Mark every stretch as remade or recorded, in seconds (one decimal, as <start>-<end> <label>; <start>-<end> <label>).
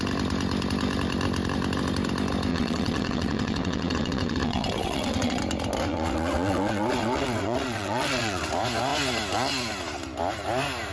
0.0-2.5 recorded; 2.5-5.4 remade; 5.4-5.9 recorded; 5.9-8.5 remade; 8.5-10.9 recorded